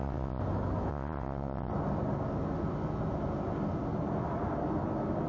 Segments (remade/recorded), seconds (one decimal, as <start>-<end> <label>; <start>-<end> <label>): 0.0-0.4 remade; 0.4-0.9 recorded; 0.9-1.7 remade; 1.7-5.3 recorded